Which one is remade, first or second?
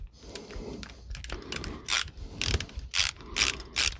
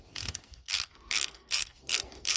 second